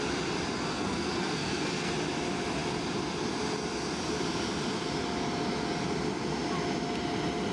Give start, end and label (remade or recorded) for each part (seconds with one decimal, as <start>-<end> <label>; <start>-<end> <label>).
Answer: 0.0-0.7 recorded; 0.7-1.9 remade; 1.9-7.5 recorded